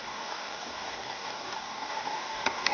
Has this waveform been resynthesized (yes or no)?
yes